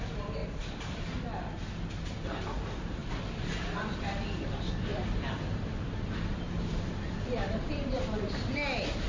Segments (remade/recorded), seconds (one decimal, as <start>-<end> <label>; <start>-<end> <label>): 0.0-0.4 recorded; 0.4-1.2 remade; 1.2-4.9 recorded; 4.9-8.0 remade; 8.0-9.1 recorded